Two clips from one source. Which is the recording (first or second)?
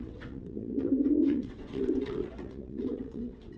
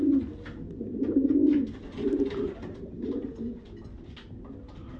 second